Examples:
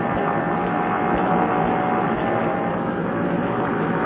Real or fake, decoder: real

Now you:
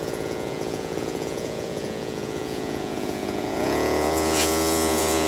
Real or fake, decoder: fake, vocoder, Vocos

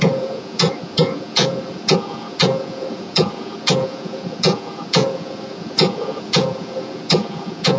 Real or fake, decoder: fake, vocoder, Vocos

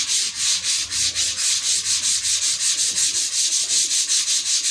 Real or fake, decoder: real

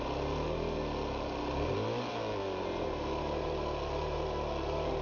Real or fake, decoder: real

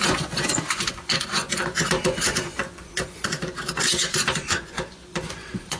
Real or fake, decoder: fake, vocoder, Vocos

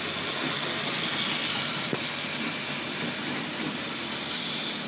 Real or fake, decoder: real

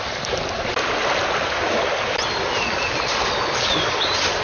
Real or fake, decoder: real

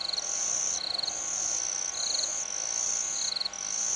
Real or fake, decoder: real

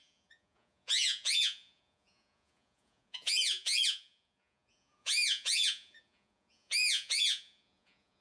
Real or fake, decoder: fake, vocoder, Vocos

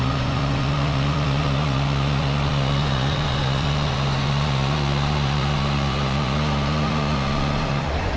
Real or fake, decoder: fake, vocoder, Vocos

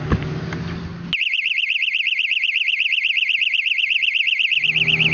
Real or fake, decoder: real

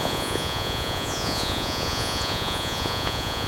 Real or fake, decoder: fake, vocoder, Vocos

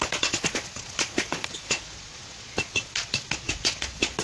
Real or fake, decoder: fake, vocoder, Vocos